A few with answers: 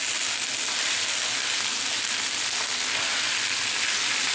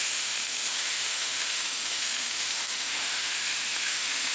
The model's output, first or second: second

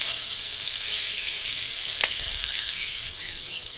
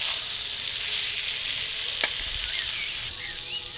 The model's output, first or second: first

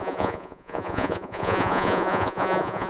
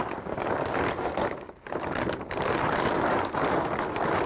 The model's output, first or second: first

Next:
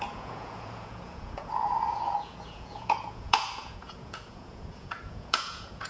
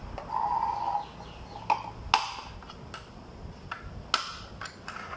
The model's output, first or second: first